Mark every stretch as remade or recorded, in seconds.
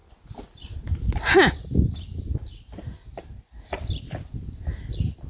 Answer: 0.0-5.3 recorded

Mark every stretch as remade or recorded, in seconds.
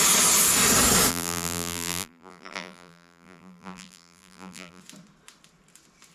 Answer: 0.0-1.1 recorded; 1.1-4.8 remade; 4.8-6.1 recorded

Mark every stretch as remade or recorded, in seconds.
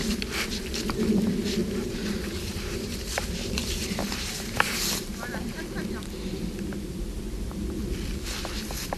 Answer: 0.0-1.6 recorded; 1.6-5.6 remade; 5.6-9.0 recorded